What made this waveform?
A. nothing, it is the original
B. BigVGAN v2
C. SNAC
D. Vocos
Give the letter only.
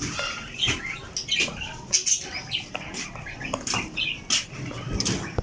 A